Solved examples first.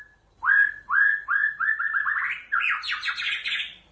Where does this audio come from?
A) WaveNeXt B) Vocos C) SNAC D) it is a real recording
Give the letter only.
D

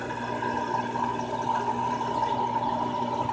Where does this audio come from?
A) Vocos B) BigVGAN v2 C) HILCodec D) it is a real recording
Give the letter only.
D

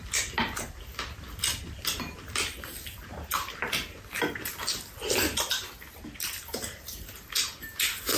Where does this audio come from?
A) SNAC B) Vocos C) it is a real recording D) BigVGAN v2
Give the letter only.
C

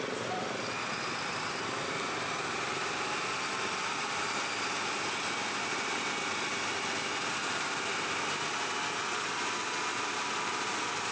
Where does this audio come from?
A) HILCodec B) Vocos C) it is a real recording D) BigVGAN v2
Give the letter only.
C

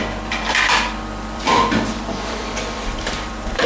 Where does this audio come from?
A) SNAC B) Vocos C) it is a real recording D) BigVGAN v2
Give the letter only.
D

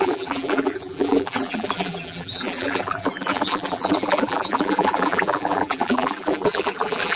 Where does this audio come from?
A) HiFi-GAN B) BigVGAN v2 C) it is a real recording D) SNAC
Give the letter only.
B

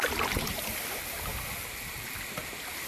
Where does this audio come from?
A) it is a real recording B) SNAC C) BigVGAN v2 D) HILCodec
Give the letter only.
A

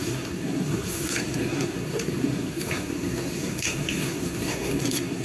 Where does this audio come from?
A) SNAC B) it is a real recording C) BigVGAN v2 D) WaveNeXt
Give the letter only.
A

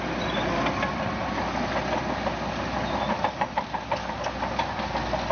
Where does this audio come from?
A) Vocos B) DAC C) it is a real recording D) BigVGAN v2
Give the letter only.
C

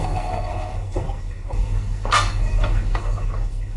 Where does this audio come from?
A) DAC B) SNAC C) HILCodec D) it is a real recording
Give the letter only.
B